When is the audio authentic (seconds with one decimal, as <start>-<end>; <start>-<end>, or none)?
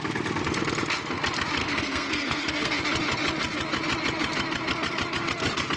0.0-1.6; 2.8-5.8